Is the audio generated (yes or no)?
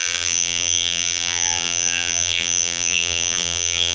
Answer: yes